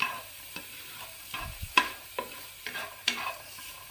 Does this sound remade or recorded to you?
remade